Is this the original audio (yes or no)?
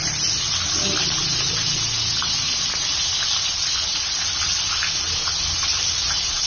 yes